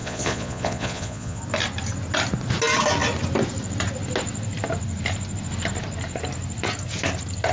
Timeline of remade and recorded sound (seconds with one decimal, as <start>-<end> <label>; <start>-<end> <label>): 0.0-1.4 remade; 1.4-7.5 recorded